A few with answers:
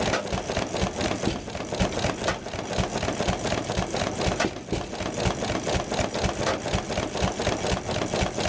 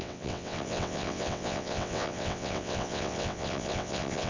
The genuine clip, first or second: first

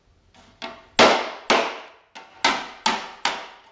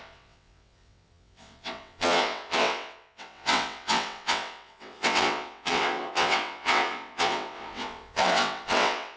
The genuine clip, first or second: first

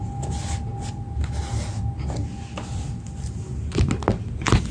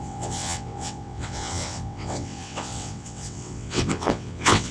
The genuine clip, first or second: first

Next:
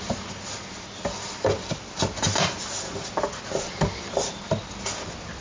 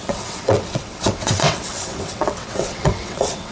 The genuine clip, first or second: first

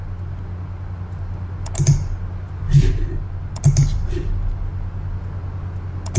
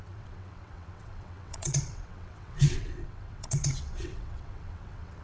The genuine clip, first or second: first